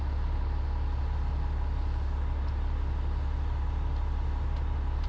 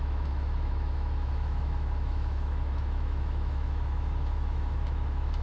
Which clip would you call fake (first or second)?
second